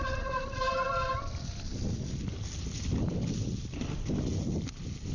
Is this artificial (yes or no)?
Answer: no